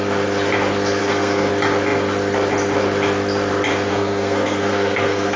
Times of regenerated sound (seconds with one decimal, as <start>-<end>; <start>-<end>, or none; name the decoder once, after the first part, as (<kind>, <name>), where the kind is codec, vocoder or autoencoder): 1.0-1.5 (codec, SNAC); 3.9-5.4